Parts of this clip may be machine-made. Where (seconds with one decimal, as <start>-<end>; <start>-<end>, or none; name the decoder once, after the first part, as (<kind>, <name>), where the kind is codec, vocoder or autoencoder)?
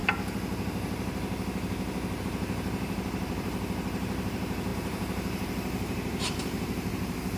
2.2-7.4 (vocoder, BigVGAN v2)